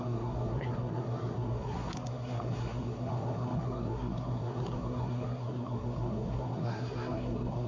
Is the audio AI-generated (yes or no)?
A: yes